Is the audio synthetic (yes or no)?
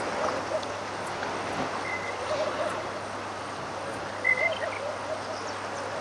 no